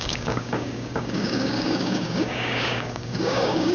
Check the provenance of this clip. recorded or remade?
remade